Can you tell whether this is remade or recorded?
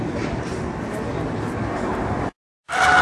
recorded